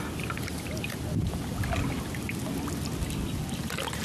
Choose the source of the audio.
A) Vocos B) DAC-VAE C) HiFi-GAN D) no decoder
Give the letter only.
D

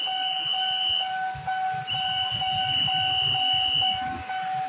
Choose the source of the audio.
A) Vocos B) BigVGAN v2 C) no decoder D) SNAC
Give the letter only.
C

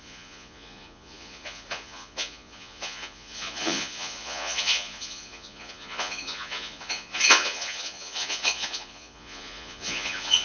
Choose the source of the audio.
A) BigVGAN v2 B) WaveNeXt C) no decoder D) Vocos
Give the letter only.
D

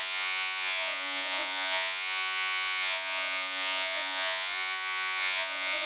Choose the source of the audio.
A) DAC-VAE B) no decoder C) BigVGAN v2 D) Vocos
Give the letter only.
D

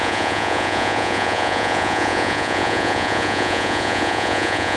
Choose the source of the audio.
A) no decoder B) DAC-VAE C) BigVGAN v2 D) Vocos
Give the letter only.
D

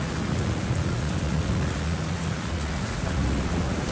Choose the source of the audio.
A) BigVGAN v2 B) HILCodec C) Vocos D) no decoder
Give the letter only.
C